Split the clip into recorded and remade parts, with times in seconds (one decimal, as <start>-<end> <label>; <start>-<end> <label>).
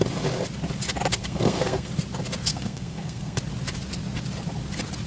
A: 0.0-1.1 recorded; 1.1-1.9 remade; 1.9-2.5 recorded; 2.5-3.4 remade; 3.4-5.1 recorded